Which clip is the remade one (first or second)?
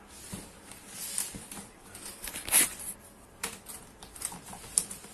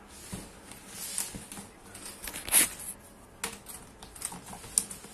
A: first